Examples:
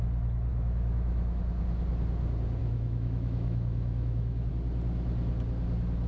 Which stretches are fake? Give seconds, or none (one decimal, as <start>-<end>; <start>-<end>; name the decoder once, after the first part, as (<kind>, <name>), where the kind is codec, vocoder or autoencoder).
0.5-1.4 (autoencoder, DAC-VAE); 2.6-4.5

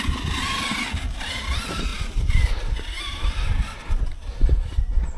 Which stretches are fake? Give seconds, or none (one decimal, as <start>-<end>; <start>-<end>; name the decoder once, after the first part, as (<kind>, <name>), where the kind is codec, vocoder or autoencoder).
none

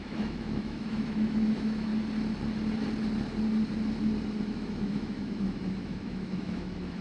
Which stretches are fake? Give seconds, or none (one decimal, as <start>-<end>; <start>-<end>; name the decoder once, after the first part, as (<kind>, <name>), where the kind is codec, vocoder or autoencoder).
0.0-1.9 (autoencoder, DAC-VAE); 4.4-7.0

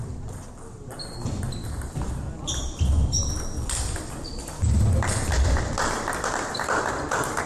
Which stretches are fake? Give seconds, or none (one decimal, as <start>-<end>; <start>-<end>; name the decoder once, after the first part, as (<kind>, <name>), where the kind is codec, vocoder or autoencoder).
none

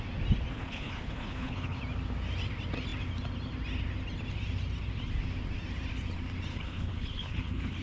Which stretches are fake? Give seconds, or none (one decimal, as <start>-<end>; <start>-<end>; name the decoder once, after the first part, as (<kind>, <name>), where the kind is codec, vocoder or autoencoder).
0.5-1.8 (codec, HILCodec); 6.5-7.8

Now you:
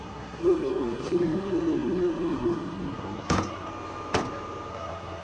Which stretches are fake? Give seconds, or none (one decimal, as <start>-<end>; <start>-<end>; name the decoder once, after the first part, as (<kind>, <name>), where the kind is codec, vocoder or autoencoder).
0.0-3.7 (codec, SNAC); 4.7-5.2